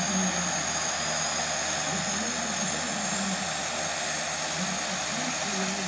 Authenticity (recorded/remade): recorded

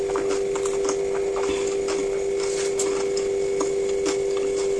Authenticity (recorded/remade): recorded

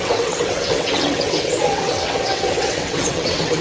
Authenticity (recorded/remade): remade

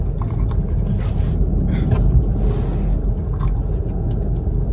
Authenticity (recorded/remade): recorded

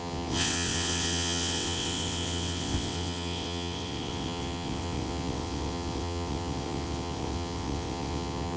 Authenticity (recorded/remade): remade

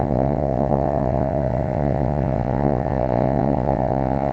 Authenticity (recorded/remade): remade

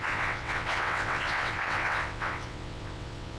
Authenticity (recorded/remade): remade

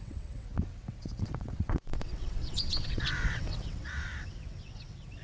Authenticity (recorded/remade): remade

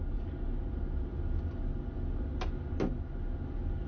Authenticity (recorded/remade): recorded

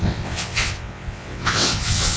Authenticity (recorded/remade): remade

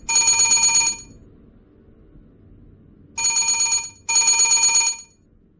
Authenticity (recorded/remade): recorded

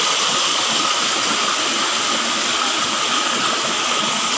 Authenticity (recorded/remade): recorded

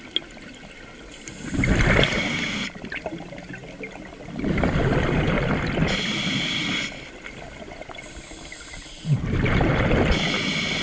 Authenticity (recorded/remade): recorded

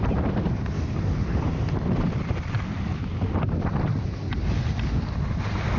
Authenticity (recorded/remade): recorded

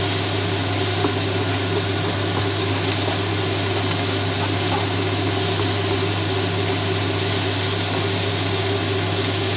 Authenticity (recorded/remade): recorded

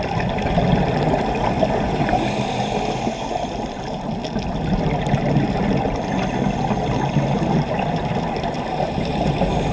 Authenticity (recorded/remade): recorded